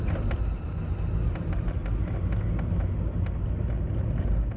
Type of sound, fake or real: real